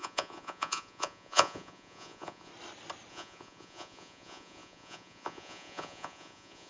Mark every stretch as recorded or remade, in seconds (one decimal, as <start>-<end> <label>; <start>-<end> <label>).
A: 0.0-2.5 remade; 2.5-3.1 recorded; 3.1-6.7 remade